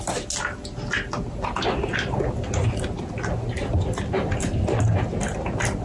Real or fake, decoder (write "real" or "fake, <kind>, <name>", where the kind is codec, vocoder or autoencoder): real